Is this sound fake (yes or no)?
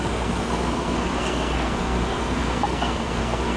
yes